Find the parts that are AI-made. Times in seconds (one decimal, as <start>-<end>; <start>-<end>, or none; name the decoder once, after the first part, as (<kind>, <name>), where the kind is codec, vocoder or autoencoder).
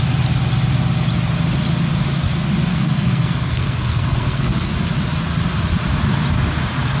2.7-4.7 (codec, SNAC)